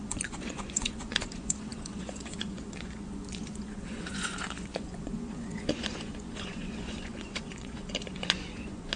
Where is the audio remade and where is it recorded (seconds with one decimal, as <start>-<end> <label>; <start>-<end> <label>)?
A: 0.0-9.0 remade